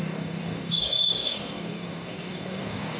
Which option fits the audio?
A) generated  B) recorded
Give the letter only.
A